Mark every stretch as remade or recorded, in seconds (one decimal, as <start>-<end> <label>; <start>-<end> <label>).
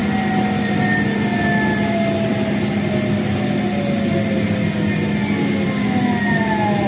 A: 0.0-6.9 recorded